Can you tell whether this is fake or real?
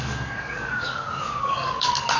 fake